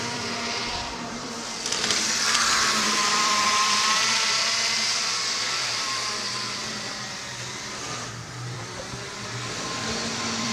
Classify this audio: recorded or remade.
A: remade